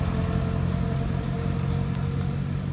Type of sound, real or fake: real